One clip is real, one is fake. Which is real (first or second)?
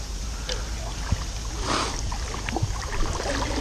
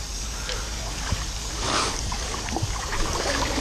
first